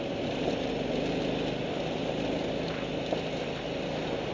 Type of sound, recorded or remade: recorded